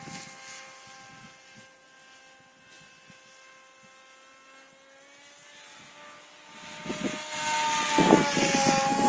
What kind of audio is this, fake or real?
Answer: real